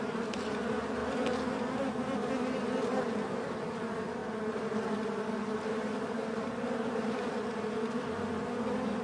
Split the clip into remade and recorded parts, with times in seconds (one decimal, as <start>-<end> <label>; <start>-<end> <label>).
0.0-9.0 recorded